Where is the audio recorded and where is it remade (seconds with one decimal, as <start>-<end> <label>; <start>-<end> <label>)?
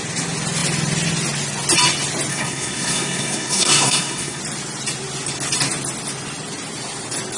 0.0-2.3 recorded; 2.3-4.4 remade; 4.4-7.4 recorded